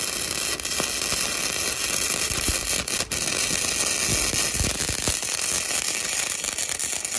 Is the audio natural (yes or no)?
yes